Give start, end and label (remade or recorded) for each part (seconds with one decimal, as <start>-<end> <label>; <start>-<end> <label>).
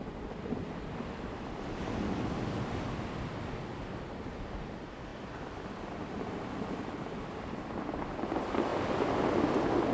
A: 0.0-9.9 recorded